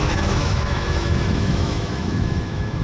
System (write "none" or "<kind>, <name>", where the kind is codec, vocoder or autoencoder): autoencoder, DAC-VAE